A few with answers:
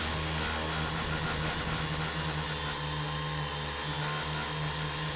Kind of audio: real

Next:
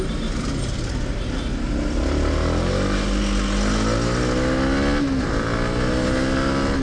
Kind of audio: real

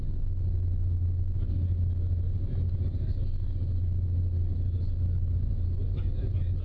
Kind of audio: real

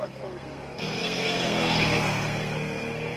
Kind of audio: fake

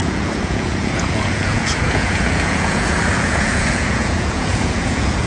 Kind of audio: fake